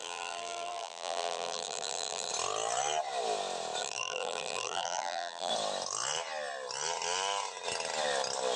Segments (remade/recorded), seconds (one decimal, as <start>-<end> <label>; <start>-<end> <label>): 0.0-2.3 remade; 2.3-3.8 recorded; 3.8-5.5 remade; 5.5-8.6 recorded